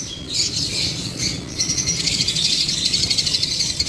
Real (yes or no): no